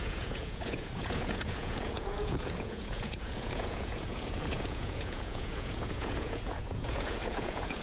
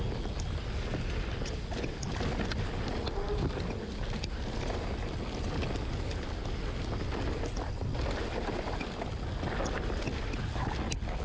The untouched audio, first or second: second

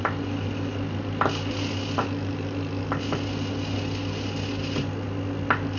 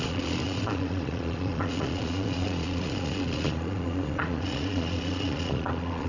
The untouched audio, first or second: first